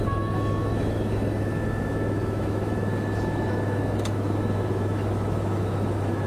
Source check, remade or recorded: remade